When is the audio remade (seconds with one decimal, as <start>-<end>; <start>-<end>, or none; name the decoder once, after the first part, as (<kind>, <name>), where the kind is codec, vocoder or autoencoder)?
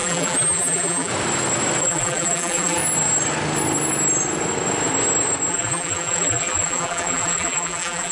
0.0-1.1 (vocoder, BigVGAN v2); 1.8-2.8; 5.5-8.1